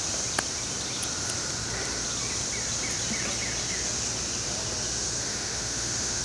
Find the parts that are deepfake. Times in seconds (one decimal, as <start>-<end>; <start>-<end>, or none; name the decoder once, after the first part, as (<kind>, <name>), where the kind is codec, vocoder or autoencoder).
5.3-6.2 (autoencoder, DAC-VAE)